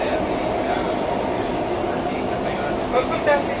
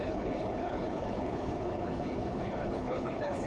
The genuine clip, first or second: first